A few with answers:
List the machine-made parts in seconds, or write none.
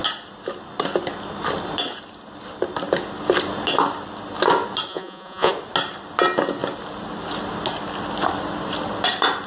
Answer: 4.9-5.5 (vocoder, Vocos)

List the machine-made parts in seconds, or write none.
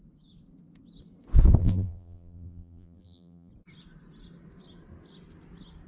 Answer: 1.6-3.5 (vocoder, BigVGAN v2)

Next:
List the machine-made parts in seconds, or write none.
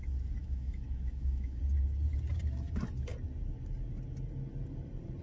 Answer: 0.4-1.6 (autoencoder, DAC-VAE)